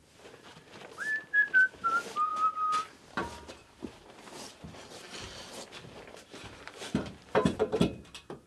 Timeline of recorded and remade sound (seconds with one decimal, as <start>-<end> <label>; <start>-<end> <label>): 0.0-3.6 recorded; 3.6-8.5 remade